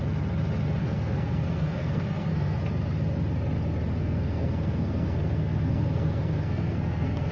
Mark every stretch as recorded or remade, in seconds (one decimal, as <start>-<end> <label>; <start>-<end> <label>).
0.0-0.8 recorded; 0.8-2.6 remade; 2.6-4.0 recorded; 4.0-7.3 remade

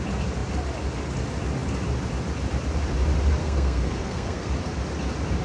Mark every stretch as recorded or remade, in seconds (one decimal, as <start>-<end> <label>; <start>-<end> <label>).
0.0-3.4 recorded; 3.4-4.5 remade; 4.5-5.4 recorded

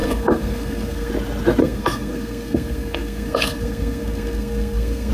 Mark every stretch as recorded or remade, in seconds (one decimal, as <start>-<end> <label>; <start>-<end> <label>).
0.0-1.1 remade; 1.1-1.6 recorded; 1.6-5.1 remade

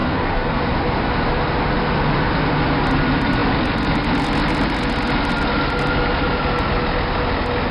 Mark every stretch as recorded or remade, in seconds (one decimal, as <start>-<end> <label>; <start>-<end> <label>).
0.0-0.6 remade; 0.6-7.7 recorded

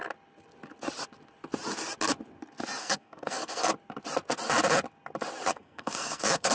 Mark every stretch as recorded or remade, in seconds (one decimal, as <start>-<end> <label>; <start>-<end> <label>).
0.0-2.8 recorded; 2.8-3.7 remade; 3.7-5.5 recorded; 5.5-6.5 remade